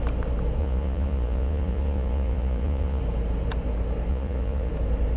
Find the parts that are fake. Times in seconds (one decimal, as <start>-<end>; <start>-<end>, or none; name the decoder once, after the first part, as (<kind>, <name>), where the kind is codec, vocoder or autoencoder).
0.6-3.0 (vocoder, Vocos); 4.1-4.7

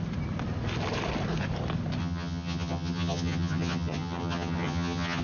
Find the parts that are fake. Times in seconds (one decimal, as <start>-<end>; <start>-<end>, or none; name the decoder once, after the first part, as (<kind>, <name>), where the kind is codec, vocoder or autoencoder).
2.0-5.2 (vocoder, HiFi-GAN)